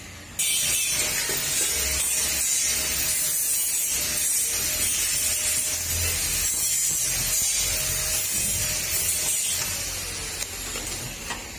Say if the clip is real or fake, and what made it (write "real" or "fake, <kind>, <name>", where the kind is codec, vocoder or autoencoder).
real